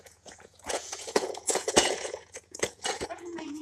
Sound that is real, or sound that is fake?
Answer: fake